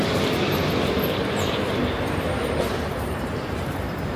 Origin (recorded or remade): remade